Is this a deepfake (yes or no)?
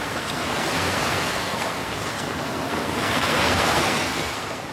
yes